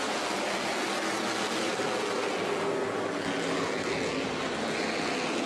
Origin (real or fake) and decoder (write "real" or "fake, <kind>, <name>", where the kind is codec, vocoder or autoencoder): real